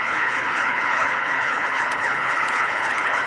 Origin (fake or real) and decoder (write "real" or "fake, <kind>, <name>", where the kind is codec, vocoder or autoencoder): fake, codec, HILCodec